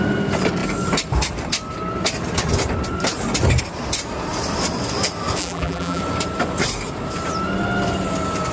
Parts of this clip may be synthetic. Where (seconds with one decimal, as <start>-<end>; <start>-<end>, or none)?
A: 5.4-6.0